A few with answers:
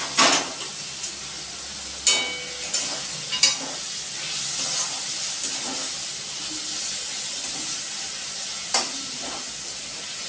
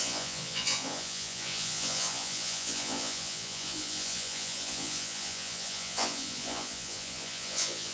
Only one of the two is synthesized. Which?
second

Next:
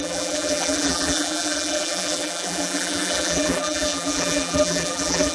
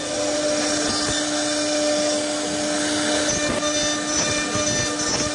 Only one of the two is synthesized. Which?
first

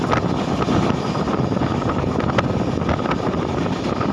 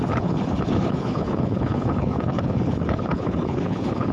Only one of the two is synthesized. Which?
second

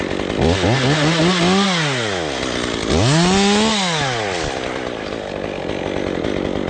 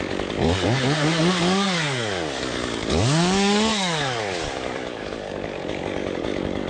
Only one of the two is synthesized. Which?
second